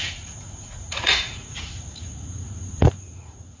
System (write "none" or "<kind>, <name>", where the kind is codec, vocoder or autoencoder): vocoder, Vocos